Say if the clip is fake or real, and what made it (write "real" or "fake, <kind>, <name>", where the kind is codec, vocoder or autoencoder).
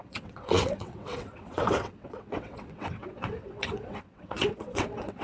fake, vocoder, WaveNeXt